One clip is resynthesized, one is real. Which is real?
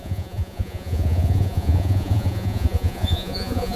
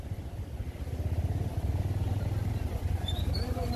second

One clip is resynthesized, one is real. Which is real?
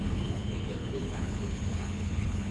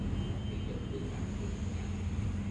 second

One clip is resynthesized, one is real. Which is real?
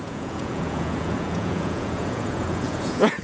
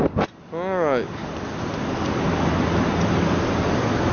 second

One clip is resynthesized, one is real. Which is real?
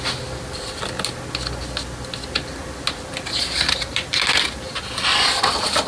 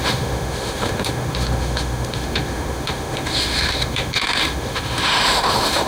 first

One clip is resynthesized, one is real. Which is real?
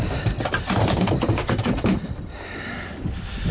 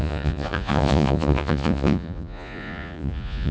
first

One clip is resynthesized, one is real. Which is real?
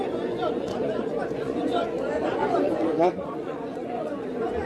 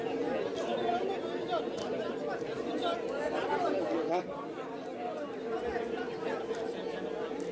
second